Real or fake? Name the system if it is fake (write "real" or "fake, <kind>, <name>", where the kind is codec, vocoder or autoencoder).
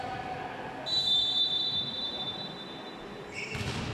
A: real